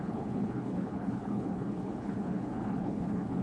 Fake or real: fake